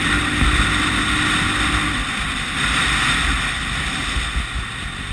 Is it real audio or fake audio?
real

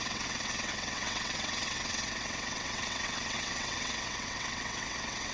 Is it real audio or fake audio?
fake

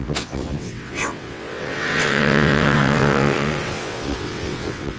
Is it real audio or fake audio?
fake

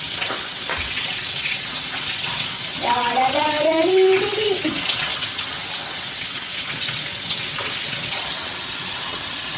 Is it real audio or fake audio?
fake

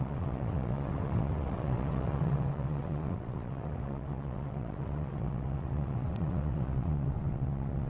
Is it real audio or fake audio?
fake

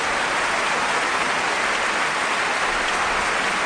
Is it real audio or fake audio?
real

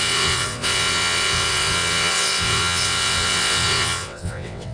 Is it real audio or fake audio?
fake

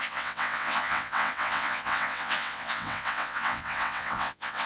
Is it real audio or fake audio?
fake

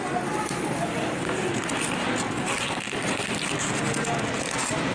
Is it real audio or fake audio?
real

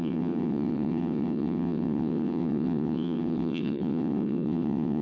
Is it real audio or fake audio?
fake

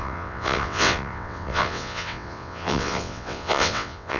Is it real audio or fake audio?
fake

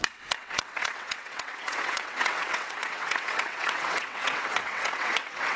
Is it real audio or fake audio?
fake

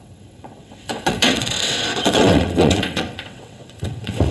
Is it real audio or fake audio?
fake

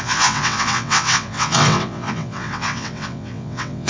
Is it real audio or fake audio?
fake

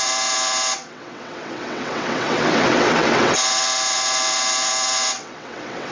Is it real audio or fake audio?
fake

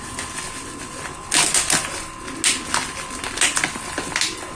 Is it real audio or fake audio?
real